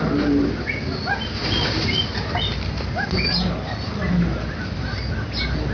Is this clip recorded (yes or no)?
yes